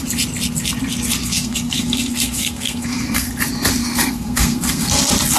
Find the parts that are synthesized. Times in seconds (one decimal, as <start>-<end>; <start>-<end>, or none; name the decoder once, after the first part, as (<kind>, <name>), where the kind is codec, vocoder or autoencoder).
1.2-3.3 (codec, SNAC); 3.8-4.9

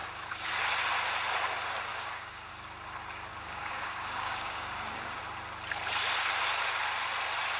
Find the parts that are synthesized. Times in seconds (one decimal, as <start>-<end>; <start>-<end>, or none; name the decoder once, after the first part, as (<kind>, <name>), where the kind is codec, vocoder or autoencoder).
0.0-0.5 (codec, DAC); 1.9-2.5; 3.3-5.2

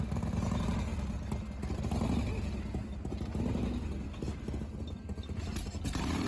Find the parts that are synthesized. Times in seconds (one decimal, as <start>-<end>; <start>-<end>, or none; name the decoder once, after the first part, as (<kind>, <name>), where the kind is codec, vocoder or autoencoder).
none

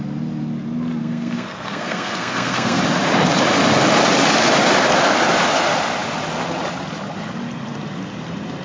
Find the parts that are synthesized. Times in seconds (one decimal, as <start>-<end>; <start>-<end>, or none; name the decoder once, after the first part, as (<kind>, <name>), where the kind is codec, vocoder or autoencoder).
1.0-2.8 (codec, SNAC)

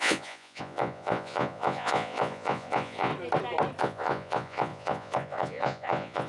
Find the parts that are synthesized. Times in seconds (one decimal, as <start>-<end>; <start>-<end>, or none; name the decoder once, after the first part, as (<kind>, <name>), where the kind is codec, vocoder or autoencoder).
0.0-3.1 (vocoder, Vocos); 3.8-6.3

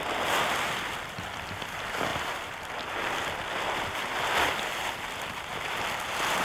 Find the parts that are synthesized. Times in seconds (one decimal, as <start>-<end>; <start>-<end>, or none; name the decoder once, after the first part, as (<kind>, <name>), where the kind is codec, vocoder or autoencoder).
2.1-3.8 (vocoder, BigVGAN v2)

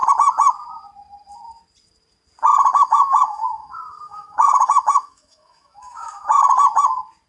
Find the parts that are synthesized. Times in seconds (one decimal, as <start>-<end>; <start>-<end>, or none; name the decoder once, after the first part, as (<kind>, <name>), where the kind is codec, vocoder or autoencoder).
2.7-6.4 (autoencoder, DAC-VAE)

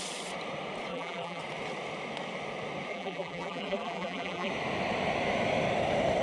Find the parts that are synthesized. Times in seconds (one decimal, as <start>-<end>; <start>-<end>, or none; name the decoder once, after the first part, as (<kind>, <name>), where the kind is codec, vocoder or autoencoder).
0.9-1.4 (vocoder, BigVGAN v2); 2.9-4.5